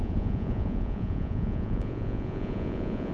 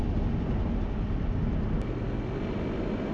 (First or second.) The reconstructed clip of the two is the first